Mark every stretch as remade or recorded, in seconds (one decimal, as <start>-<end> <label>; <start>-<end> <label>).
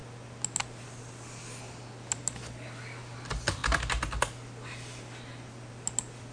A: 0.0-6.3 recorded